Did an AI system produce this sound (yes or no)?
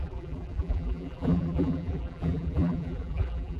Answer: yes